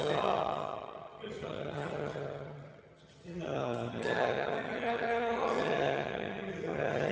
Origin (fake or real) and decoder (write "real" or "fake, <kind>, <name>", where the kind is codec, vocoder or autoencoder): fake, vocoder, HiFi-GAN